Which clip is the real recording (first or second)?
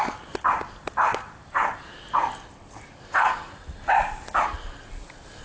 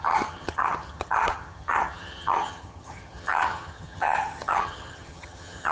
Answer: first